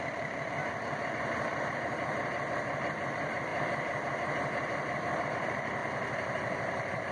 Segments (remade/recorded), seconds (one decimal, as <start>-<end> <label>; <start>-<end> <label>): 0.0-0.6 remade; 0.6-1.1 recorded; 1.1-3.5 remade; 3.5-5.2 recorded; 5.2-5.8 remade; 5.8-7.1 recorded